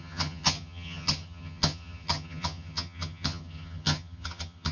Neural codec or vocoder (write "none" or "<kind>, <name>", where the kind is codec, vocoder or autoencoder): vocoder, HiFi-GAN